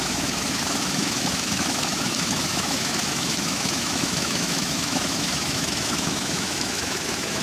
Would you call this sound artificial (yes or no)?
yes